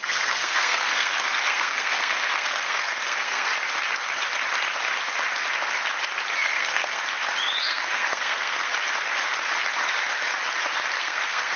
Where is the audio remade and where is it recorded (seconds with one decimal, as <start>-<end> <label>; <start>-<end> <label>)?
0.0-3.5 remade; 3.5-6.5 recorded; 6.5-7.0 remade; 7.0-7.6 recorded; 7.6-8.7 remade; 8.7-11.0 recorded; 11.0-11.6 remade